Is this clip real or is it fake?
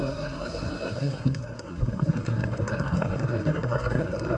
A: fake